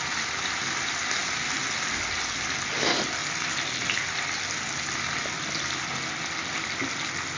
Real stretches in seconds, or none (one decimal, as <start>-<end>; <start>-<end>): 0.0-7.4